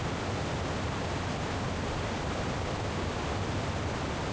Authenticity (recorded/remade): recorded